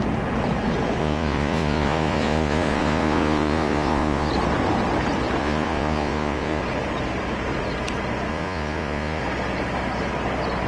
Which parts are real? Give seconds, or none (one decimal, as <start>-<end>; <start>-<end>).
0.0-1.0; 4.3-5.4; 6.6-8.3; 9.2-10.7

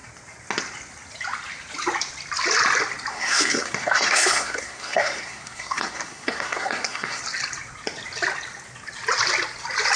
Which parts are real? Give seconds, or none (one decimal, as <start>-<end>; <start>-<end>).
0.0-3.1; 7.2-10.0

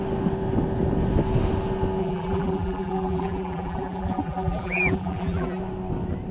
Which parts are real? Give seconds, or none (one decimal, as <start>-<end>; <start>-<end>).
0.0-2.0; 5.6-6.3